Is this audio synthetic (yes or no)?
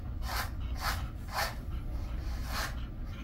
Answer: no